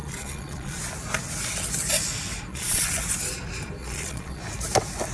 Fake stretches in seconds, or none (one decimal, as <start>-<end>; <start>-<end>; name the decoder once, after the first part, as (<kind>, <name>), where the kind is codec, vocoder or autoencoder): 0.0-0.8 (vocoder, Vocos); 2.5-3.0; 3.8-4.4